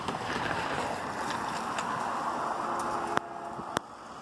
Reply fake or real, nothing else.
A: real